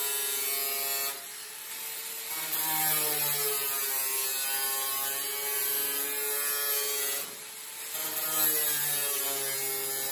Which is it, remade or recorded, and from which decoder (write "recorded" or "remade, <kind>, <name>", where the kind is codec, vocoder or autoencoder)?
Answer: recorded